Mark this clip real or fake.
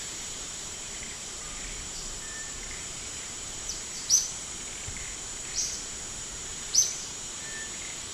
fake